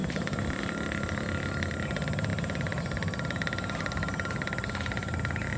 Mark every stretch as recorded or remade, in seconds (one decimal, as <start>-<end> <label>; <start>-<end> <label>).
0.0-0.6 remade; 0.6-5.6 recorded